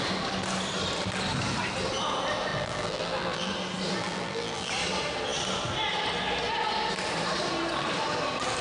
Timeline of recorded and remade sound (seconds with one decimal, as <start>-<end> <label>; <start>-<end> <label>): 0.0-2.5 recorded; 2.5-3.5 remade; 3.5-4.0 recorded; 4.0-4.7 remade; 4.7-8.6 recorded